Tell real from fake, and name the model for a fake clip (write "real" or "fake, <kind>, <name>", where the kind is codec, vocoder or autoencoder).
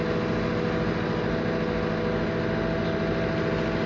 real